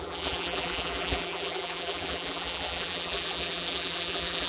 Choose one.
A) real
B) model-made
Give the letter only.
B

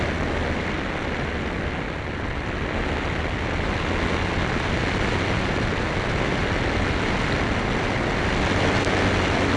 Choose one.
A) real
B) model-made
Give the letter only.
A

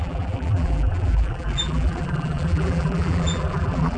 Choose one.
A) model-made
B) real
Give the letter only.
A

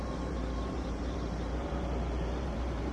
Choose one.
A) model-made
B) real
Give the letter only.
A